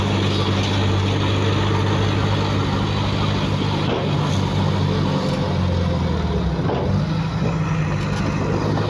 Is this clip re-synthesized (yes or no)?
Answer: no